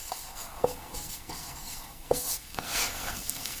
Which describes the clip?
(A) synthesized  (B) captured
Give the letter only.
A